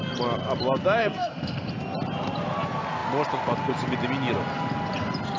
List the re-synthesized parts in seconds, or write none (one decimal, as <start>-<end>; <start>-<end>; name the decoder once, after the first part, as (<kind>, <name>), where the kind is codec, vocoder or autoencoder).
1.0-1.7 (codec, SNAC)